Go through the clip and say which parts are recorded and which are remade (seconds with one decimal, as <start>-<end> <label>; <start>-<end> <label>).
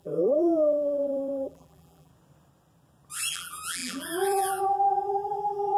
0.0-2.1 remade; 2.1-3.3 recorded; 3.3-5.8 remade